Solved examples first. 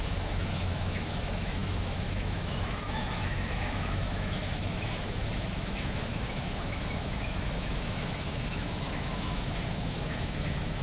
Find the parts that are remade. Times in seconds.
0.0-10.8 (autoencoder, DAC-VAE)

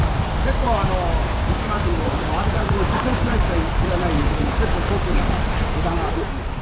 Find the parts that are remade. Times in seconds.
0.6-3.7 (codec, DAC); 4.2-5.4

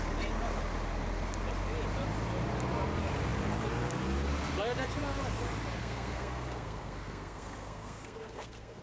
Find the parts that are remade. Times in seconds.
5.8-8.8 (codec, SNAC)

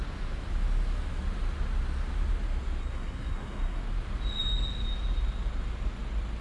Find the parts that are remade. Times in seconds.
2.8-3.8 (codec, SNAC)

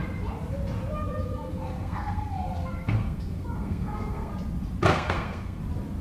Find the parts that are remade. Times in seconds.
1.3-4.3 (codec, SNAC); 4.9-5.6

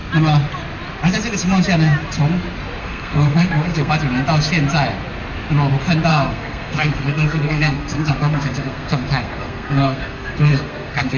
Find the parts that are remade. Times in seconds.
2.8-3.9 (codec, SNAC); 6.1-11.2